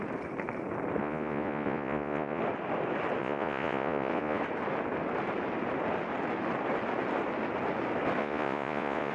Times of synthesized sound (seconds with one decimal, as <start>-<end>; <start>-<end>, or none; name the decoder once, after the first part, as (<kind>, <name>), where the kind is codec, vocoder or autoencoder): 1.0-2.4 (vocoder, Vocos); 3.2-4.4; 8.2-9.1